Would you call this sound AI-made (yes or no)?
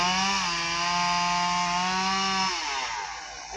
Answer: no